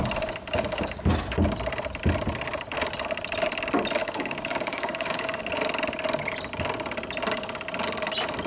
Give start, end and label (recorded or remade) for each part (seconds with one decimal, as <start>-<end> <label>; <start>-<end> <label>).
0.0-4.0 recorded; 4.0-5.4 remade; 5.4-8.5 recorded